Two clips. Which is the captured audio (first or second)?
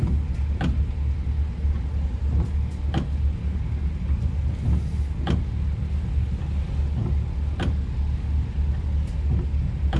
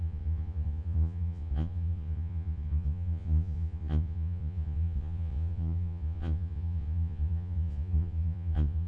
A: first